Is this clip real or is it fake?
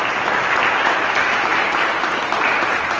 real